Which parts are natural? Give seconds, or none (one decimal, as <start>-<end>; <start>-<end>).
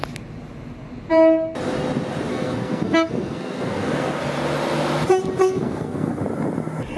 0.0-2.3; 4.2-5.4; 6.2-7.0